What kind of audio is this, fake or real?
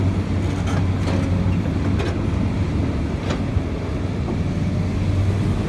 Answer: real